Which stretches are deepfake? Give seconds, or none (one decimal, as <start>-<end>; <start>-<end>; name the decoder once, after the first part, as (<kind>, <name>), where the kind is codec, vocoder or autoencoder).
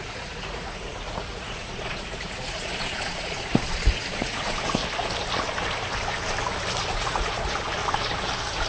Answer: 0.0-4.8 (vocoder, Vocos); 7.0-7.8